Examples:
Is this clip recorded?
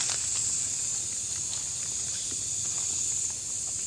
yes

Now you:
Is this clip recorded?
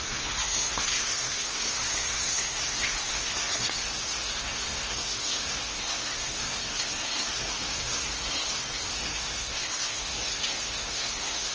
no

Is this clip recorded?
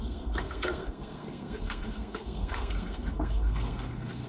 no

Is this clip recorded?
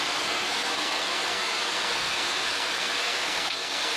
no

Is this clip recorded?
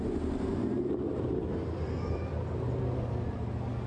yes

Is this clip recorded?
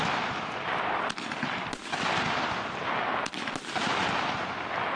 yes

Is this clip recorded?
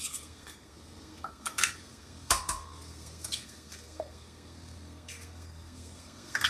no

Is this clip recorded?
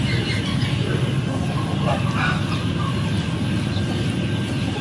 yes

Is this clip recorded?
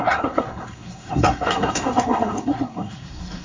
no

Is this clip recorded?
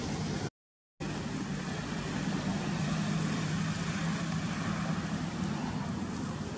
yes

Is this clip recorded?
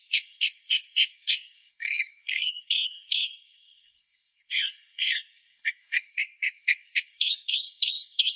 no